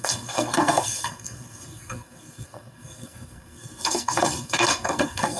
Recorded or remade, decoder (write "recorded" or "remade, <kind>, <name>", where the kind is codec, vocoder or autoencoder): remade, codec, SNAC